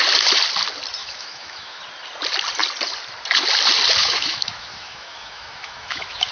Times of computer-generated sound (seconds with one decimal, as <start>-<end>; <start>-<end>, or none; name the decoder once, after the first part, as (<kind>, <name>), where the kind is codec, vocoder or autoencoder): 1.0-1.8 (autoencoder, DAC-VAE); 4.0-6.3

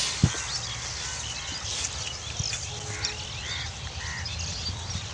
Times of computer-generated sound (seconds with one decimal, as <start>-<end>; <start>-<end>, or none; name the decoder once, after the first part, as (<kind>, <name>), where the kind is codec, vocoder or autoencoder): none

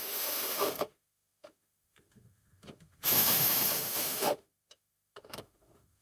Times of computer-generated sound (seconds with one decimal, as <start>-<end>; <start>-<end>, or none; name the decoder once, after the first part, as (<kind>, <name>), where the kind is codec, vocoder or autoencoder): 0.0-6.0 (autoencoder, DAC-VAE)

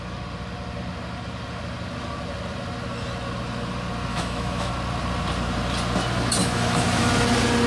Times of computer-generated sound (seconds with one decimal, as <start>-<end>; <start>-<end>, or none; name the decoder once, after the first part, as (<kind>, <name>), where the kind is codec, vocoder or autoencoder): 4.1-4.7 (autoencoder, DAC-VAE); 6.4-7.1